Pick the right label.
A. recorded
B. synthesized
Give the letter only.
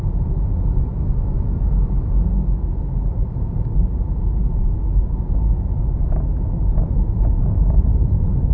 A